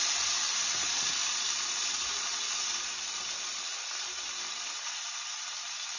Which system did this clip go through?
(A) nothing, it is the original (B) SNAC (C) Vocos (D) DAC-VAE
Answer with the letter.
A